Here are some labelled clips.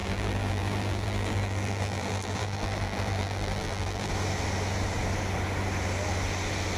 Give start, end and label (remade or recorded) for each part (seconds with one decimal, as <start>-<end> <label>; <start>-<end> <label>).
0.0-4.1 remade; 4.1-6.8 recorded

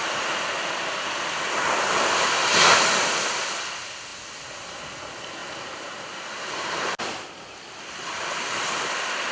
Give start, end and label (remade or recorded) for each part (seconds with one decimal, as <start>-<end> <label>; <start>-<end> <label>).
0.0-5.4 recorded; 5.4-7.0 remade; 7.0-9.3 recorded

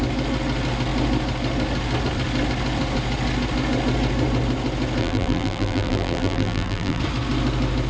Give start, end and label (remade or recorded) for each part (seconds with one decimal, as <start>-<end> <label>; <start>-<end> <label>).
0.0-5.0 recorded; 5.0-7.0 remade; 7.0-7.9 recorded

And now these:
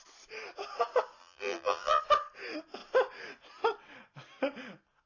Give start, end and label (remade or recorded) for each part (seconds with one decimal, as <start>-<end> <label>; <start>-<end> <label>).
0.0-1.2 recorded; 1.2-2.0 remade; 2.0-5.1 recorded

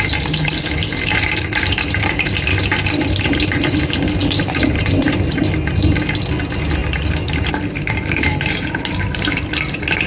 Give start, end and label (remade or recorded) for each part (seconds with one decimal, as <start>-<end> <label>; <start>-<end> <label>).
0.0-0.8 recorded; 0.8-2.3 remade; 2.3-4.2 recorded; 4.2-5.3 remade; 5.3-6.8 recorded; 6.8-9.5 remade; 9.5-10.1 recorded

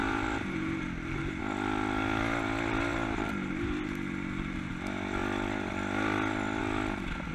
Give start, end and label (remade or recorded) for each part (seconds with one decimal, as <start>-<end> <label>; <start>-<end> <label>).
0.0-1.4 remade; 1.4-2.9 recorded; 2.9-4.7 remade; 4.7-7.3 recorded